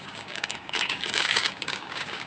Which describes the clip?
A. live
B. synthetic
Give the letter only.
B